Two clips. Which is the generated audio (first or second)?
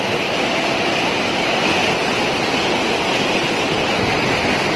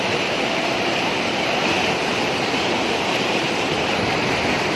second